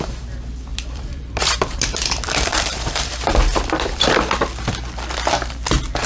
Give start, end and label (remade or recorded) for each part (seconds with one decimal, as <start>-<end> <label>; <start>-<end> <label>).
0.0-0.7 recorded; 0.7-4.4 remade; 4.4-6.1 recorded